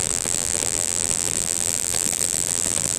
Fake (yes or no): yes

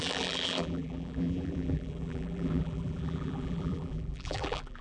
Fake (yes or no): yes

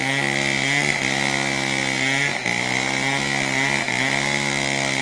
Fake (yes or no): no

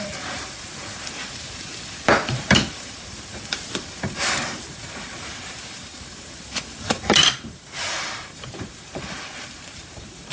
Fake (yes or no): yes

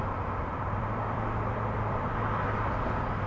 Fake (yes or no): yes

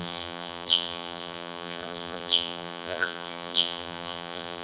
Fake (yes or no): yes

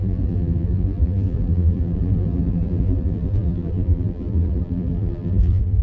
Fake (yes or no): yes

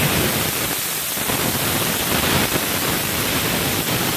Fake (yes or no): yes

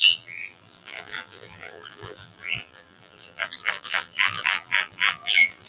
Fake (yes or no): yes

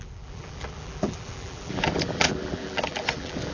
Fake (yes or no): yes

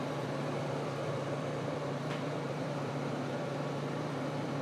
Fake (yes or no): yes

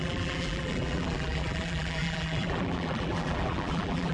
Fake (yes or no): yes